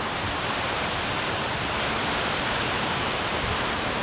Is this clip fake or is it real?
fake